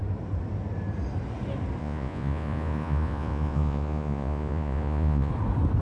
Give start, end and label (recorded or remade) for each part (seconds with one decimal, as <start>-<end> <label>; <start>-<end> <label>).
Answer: 0.0-1.8 recorded; 1.8-5.3 remade; 5.3-5.8 recorded